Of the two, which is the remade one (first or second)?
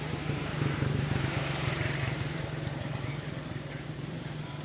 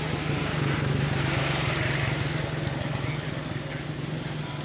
first